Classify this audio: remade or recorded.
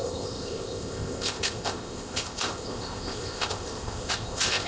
remade